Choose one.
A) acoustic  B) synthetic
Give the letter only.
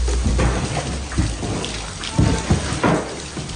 A